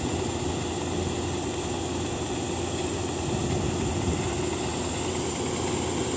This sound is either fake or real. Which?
real